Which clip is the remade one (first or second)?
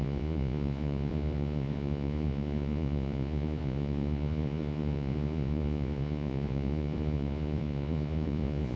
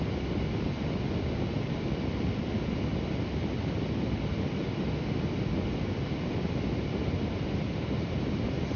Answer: first